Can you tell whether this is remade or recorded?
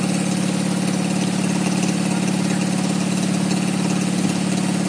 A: recorded